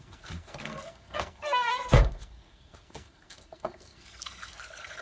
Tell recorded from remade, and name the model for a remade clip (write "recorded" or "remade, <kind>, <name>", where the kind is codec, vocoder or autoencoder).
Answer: remade, codec, SNAC